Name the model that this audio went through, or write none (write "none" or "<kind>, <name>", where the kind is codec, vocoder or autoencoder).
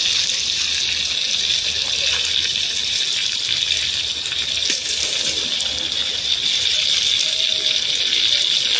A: none